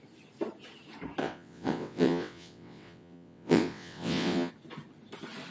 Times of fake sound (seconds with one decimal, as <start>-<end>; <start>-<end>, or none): 1.2-4.5